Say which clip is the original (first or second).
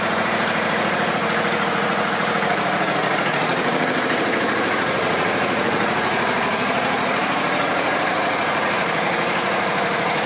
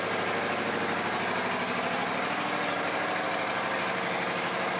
second